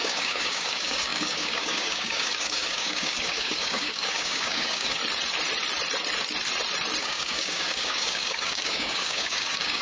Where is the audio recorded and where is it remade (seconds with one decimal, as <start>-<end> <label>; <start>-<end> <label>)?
0.0-5.0 remade; 5.0-7.0 recorded; 7.0-9.8 remade